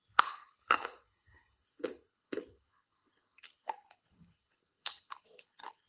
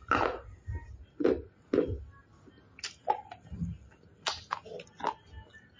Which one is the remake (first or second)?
first